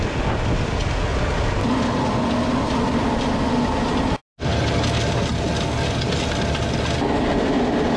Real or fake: real